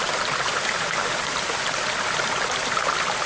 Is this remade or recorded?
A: recorded